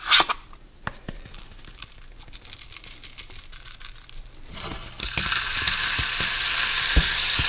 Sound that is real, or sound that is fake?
real